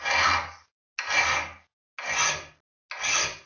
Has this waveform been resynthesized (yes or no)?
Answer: no